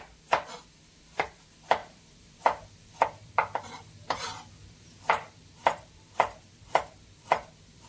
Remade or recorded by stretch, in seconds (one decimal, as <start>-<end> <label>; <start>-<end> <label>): 0.0-1.8 recorded; 1.8-3.3 remade; 3.3-4.6 recorded; 4.6-6.7 remade; 6.7-7.9 recorded